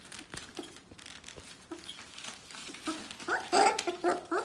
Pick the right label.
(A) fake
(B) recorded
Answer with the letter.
B